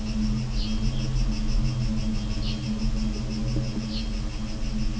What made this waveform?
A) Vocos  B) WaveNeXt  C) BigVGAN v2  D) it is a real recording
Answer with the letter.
D